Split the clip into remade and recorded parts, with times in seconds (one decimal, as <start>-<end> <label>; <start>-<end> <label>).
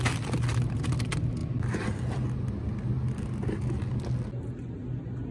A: 0.0-5.3 recorded